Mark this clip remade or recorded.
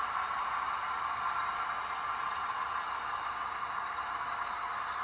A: recorded